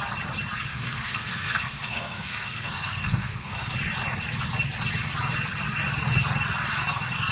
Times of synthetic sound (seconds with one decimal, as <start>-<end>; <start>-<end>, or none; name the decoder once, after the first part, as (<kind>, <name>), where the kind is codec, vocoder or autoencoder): 0.7-3.7 (codec, SNAC)